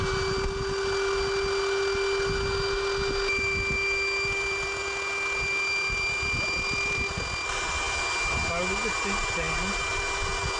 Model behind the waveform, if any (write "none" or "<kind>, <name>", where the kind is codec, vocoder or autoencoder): none